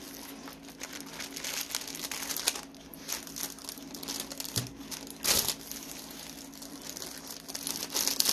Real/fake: real